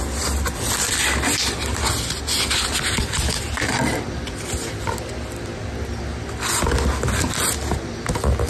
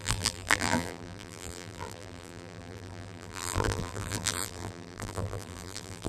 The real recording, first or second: first